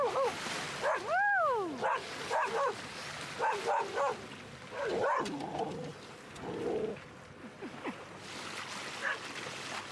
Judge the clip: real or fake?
real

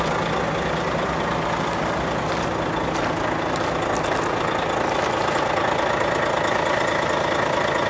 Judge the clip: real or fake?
real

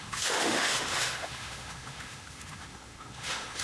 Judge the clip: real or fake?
fake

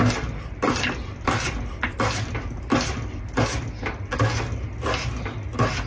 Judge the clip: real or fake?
real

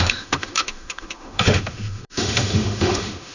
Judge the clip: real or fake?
fake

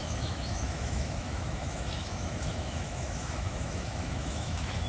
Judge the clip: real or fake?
fake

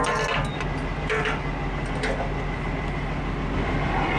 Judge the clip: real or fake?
real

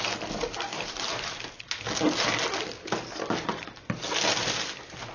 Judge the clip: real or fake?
real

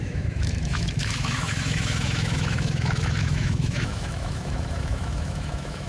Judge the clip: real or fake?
fake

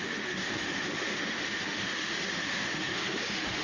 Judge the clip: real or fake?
fake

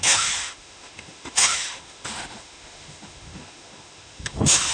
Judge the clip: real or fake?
fake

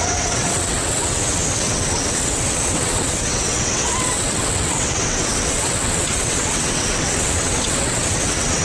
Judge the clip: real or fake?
fake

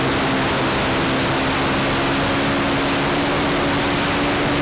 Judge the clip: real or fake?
real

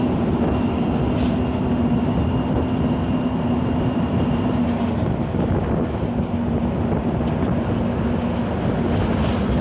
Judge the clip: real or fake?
real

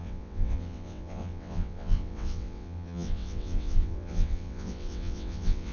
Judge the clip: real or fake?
fake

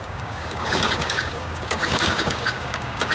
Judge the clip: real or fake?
fake